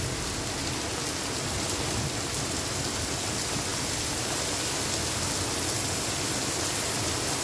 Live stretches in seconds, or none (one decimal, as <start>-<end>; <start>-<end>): 0.0-7.4